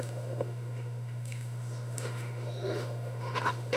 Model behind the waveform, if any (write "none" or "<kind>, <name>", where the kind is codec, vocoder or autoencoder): autoencoder, DAC-VAE